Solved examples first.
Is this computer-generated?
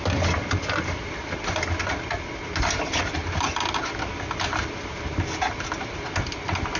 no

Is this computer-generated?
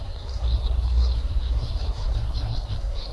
yes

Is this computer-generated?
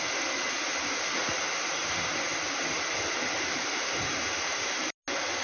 no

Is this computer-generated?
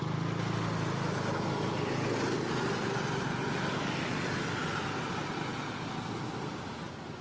no